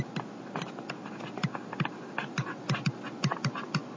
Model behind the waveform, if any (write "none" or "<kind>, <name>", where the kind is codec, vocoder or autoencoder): none